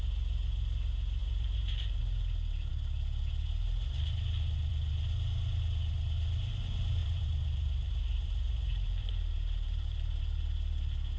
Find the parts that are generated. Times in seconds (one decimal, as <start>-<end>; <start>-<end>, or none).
1.2-2.0; 7.0-10.2